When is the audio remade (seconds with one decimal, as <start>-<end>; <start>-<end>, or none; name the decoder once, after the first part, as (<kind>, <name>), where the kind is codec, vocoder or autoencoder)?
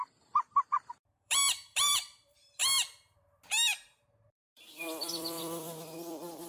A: 0.0-2.6 (vocoder, BigVGAN v2); 4.4-6.5